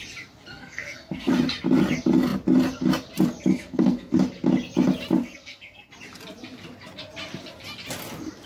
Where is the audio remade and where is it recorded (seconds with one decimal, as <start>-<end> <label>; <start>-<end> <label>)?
0.0-0.5 recorded; 0.5-1.3 remade; 1.3-3.5 recorded; 3.5-4.2 remade; 4.2-5.2 recorded; 5.2-5.9 remade; 5.9-8.5 recorded